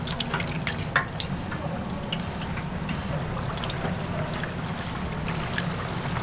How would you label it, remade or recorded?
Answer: recorded